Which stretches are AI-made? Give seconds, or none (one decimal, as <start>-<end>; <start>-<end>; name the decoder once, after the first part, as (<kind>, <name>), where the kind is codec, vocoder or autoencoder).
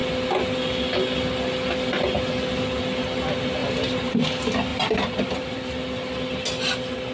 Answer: 3.6-4.2 (vocoder, BigVGAN v2); 4.7-5.7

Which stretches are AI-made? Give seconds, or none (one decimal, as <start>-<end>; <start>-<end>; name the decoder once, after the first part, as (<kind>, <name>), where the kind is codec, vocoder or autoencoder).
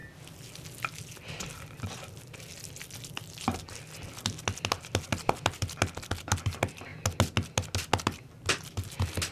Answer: none